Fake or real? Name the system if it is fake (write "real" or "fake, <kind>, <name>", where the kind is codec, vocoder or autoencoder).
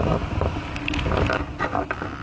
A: real